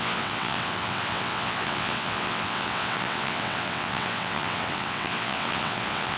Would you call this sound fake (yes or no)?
yes